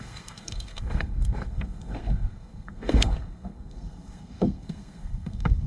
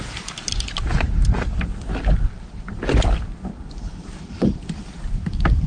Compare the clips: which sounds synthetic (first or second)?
first